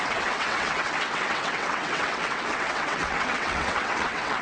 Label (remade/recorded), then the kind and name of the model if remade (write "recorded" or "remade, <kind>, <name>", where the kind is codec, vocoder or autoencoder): remade, vocoder, WaveNeXt